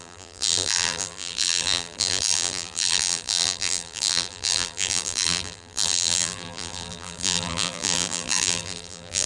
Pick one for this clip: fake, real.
fake